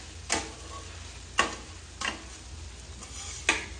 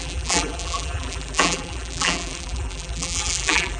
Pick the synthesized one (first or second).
second